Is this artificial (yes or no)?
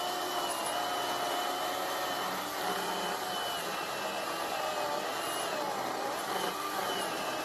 no